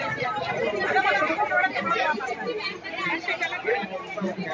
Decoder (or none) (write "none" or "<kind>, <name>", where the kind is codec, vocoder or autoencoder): none